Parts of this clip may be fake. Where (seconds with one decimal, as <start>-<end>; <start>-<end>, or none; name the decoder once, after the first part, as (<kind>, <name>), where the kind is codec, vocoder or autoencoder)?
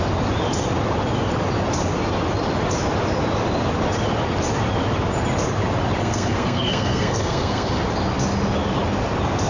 6.0-7.8 (codec, SNAC)